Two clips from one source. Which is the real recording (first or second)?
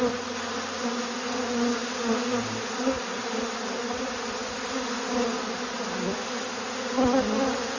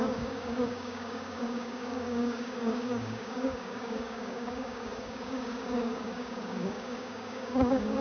first